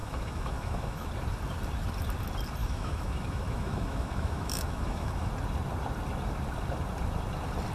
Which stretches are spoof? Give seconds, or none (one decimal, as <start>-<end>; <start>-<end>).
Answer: 0.0-1.1; 2.6-5.3